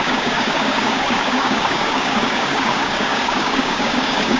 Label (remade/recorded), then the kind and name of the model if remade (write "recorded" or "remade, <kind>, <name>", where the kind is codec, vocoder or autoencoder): remade, codec, DAC